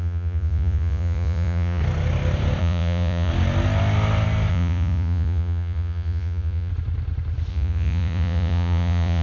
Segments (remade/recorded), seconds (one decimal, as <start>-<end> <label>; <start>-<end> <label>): 0.0-1.8 remade; 1.8-2.6 recorded; 2.6-3.3 remade; 3.3-4.5 recorded; 4.5-6.7 remade; 6.7-7.5 recorded; 7.5-9.2 remade